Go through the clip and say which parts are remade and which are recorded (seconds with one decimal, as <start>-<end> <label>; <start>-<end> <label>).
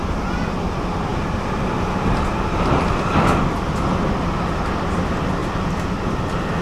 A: 0.0-6.6 recorded